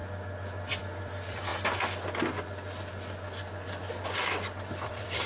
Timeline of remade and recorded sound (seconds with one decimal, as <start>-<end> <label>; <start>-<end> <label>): 0.0-0.7 recorded; 0.7-1.5 remade; 1.5-4.7 recorded; 4.7-5.3 remade